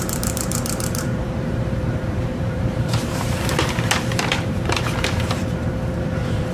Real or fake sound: fake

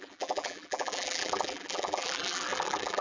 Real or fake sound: fake